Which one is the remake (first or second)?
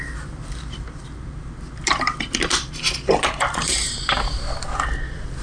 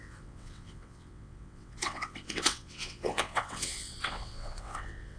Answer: second